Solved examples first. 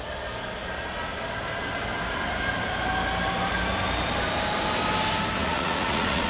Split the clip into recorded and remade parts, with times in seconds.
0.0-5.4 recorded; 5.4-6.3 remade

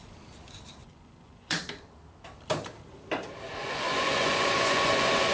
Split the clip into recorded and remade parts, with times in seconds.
0.0-0.8 recorded; 0.8-1.6 remade; 1.6-3.6 recorded; 3.6-5.3 remade